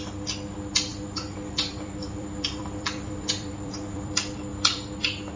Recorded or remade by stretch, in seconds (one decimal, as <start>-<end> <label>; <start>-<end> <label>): 0.0-0.9 recorded; 0.9-4.1 remade; 4.1-4.5 recorded; 4.5-5.4 remade